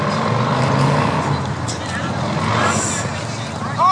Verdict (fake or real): real